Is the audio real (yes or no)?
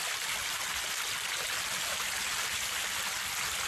yes